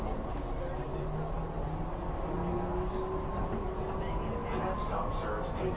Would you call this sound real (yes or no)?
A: yes